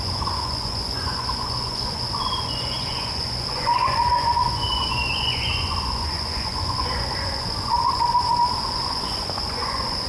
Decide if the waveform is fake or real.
fake